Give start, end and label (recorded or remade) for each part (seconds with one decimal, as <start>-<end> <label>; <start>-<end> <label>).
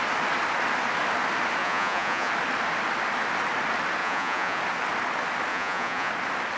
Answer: 0.0-1.6 recorded; 1.6-2.3 remade; 2.3-4.0 recorded; 4.0-4.6 remade; 4.6-5.5 recorded; 5.5-6.1 remade; 6.1-6.6 recorded